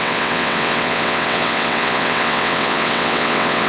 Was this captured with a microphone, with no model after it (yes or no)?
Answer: no